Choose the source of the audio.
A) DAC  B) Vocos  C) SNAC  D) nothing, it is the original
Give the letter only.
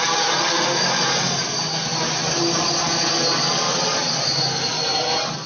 D